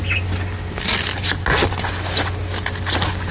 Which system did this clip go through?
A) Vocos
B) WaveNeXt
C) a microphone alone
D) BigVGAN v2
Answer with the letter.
C